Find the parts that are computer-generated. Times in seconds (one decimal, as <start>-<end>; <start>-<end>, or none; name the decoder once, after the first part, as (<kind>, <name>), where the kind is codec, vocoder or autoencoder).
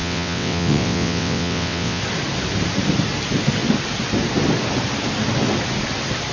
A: 0.0-2.0 (vocoder, WaveNeXt)